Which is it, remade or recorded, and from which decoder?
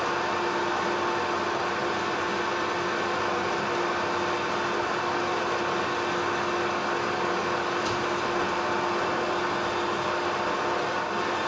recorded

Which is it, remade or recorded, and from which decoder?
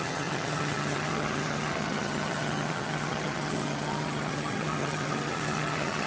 remade, vocoder, HiFi-GAN